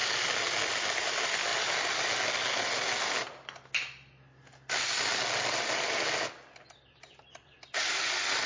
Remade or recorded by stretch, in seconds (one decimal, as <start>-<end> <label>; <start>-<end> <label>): 0.0-0.7 recorded; 0.7-1.5 remade; 1.5-5.5 recorded; 5.5-8.5 remade